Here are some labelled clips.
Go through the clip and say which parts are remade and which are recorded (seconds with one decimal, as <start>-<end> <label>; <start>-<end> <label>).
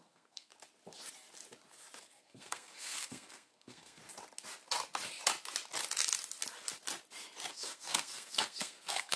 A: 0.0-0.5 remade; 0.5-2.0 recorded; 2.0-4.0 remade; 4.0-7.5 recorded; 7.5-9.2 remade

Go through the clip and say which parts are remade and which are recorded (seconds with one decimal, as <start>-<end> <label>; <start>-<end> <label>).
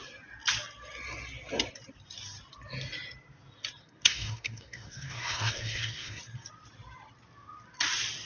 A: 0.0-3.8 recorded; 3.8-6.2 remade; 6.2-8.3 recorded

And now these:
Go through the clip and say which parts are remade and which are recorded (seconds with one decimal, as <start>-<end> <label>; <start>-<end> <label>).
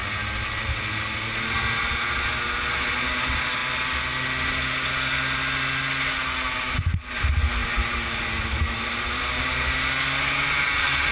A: 0.0-11.1 recorded